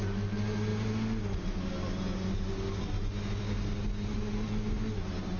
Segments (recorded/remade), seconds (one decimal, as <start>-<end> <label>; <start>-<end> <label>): 0.0-5.4 recorded

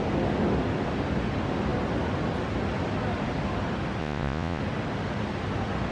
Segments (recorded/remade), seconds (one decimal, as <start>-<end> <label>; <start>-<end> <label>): 0.0-4.0 recorded; 4.0-4.6 remade; 4.6-5.9 recorded

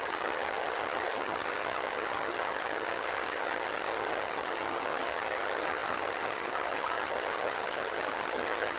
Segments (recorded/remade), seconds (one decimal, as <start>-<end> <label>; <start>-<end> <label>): 0.0-8.8 remade

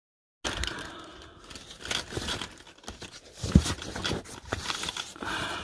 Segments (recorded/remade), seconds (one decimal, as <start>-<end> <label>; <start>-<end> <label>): 0.0-5.6 recorded

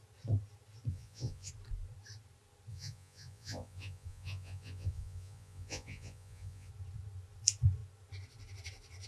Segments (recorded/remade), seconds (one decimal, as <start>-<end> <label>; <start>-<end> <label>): 0.0-0.9 recorded; 0.9-1.5 remade; 1.5-2.7 recorded; 2.7-6.7 remade; 6.7-9.1 recorded